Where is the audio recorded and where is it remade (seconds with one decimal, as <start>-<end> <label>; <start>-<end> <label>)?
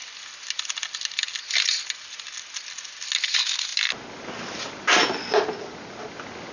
0.0-6.5 recorded